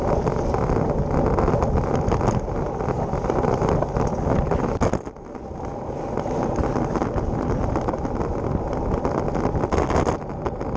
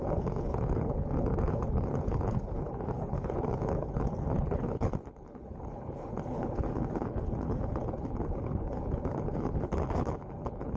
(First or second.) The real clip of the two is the first